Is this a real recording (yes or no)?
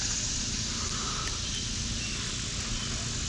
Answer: yes